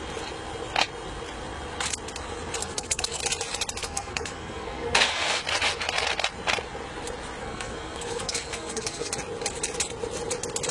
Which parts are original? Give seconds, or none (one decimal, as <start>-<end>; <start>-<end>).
0.0-2.6; 3.2-3.8; 5.4-7.4; 9.1-10.7

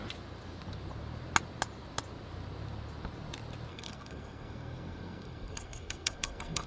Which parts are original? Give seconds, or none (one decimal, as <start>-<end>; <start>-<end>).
0.0-3.7

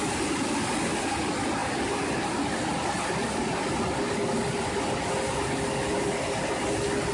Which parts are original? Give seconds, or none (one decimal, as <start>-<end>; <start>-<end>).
0.0-7.1

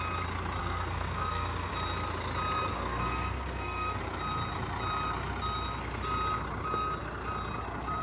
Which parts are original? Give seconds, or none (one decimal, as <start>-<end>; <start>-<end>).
0.0-0.6; 1.7-2.7; 4.0-8.0

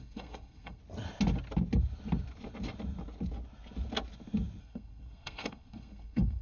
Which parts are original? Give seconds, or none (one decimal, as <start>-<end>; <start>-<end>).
0.8-4.6

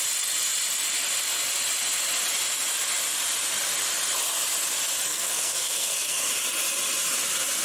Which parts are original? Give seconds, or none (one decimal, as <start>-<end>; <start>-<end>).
0.0-5.1; 6.3-7.6

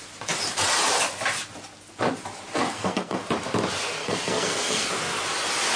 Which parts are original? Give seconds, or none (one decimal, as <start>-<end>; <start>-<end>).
0.0-2.6; 3.2-4.0; 4.9-5.8